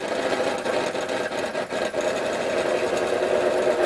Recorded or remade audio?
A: recorded